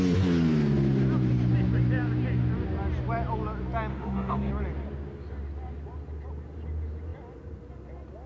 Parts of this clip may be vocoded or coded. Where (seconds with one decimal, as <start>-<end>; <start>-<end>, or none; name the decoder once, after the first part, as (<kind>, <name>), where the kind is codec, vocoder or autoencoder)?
3.9-4.5 (autoencoder, DAC-VAE)